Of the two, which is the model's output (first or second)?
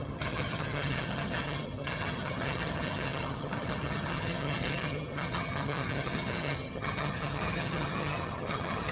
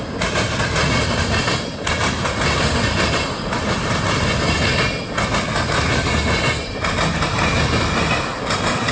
first